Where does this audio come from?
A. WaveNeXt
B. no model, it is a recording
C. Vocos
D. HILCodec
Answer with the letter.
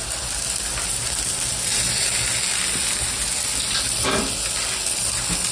B